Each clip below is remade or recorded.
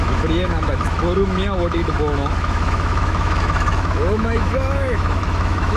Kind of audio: remade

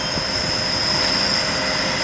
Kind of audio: recorded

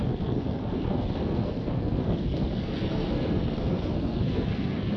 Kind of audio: remade